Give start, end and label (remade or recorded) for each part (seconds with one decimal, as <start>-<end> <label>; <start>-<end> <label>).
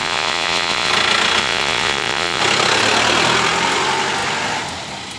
0.0-0.9 remade; 0.9-1.4 recorded; 1.4-2.4 remade; 2.4-5.2 recorded